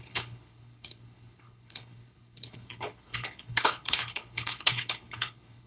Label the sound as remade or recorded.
remade